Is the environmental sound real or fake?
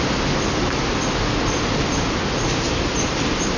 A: real